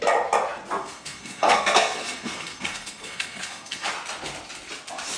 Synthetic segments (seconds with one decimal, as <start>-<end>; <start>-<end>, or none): 0.8-3.9